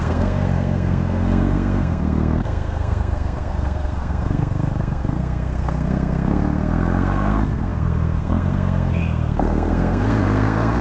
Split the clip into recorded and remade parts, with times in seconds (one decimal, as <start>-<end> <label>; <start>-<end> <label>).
0.0-10.8 remade